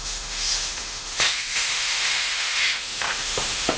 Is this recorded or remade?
remade